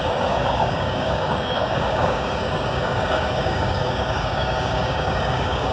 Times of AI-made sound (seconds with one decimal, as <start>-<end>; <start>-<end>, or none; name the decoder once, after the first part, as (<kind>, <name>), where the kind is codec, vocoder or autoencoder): 0.0-5.7 (codec, DAC)